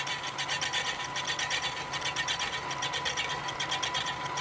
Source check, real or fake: real